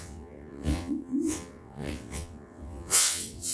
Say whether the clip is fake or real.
fake